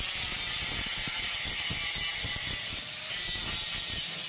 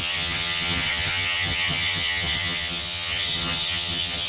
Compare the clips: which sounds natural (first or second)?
first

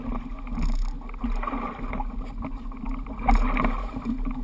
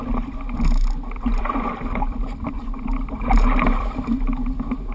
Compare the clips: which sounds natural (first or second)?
first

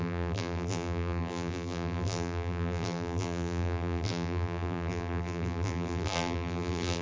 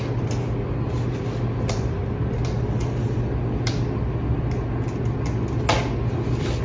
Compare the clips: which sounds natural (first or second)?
second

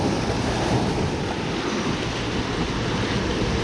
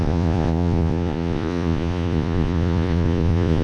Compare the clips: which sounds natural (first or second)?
first